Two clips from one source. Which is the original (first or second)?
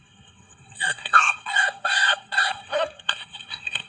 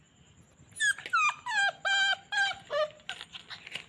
second